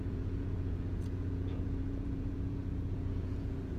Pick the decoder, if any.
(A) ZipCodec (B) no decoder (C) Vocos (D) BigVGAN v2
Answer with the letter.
C